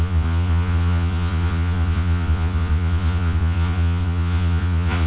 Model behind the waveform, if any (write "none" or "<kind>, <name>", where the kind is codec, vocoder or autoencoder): vocoder, Vocos